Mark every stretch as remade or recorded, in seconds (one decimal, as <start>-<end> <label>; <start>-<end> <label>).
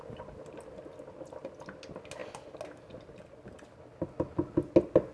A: 0.0-5.1 recorded